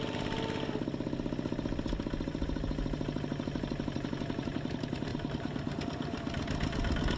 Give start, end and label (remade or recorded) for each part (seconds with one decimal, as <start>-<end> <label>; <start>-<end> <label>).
0.0-5.1 recorded; 5.1-5.8 remade; 5.8-7.2 recorded